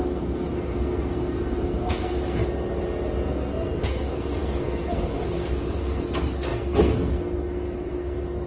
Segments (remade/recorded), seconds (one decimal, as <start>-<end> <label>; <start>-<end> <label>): 0.0-2.4 remade; 2.4-3.3 recorded; 3.3-8.5 remade